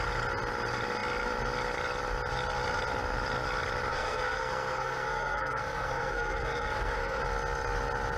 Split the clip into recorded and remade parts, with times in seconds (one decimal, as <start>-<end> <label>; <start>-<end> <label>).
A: 0.0-3.9 recorded; 3.9-7.2 remade; 7.2-8.2 recorded